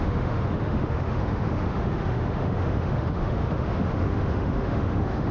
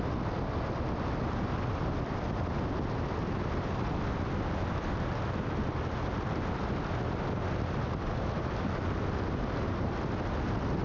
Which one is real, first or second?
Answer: second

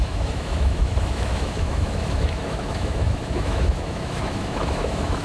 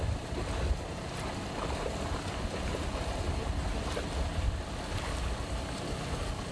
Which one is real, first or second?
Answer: second